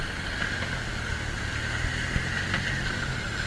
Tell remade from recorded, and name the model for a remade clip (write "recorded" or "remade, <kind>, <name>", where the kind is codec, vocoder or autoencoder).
recorded